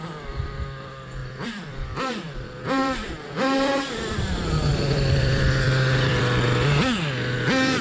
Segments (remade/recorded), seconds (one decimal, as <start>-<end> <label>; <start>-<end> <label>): 0.0-1.2 recorded; 1.2-3.8 remade; 3.8-4.7 recorded; 4.7-6.2 remade; 6.2-7.8 recorded